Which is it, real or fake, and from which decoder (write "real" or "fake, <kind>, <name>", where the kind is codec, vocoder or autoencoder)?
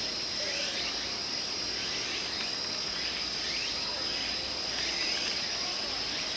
real